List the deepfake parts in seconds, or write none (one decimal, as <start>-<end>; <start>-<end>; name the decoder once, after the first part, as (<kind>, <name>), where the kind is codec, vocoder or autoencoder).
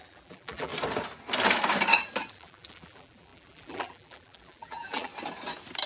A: 0.0-0.7 (vocoder, BigVGAN v2); 2.3-5.1